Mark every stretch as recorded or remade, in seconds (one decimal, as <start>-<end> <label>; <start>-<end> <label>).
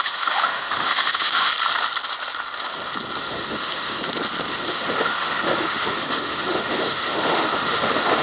0.0-1.5 remade; 1.5-3.2 recorded; 3.2-4.0 remade; 4.0-4.5 recorded; 4.5-8.2 remade